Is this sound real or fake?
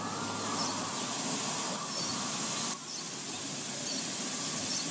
real